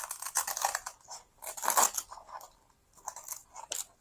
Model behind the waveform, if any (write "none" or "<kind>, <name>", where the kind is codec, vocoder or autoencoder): none